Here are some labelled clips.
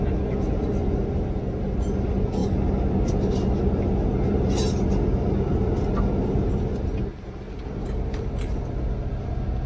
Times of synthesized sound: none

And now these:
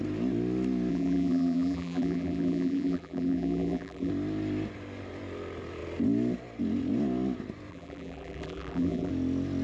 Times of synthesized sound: 0.9-4.1 (vocoder, BigVGAN v2); 7.7-9.1

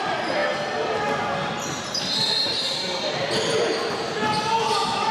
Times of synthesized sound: none

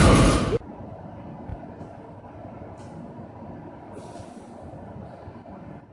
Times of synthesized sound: none

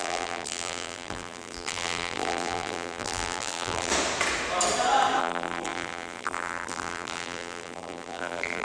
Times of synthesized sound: 0.0-3.9 (vocoder, BigVGAN v2); 5.2-8.6

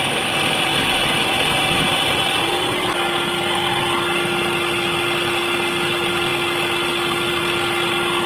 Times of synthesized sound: none

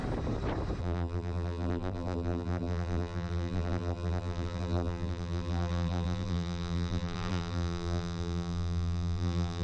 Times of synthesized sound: 0.8-9.6 (vocoder, BigVGAN v2)

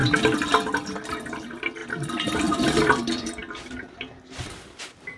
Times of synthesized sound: 1.1-5.2 (vocoder, BigVGAN v2)